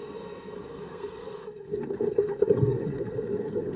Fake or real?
fake